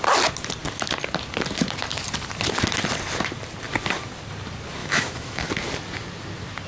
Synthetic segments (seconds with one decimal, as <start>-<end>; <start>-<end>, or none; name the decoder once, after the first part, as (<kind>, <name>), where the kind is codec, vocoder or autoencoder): 4.8-5.5 (autoencoder, DAC-VAE)